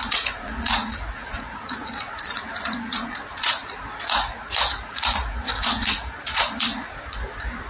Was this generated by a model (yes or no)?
yes